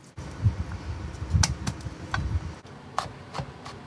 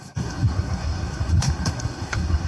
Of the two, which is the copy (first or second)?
second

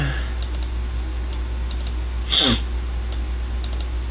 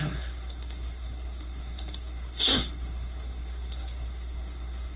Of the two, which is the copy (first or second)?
second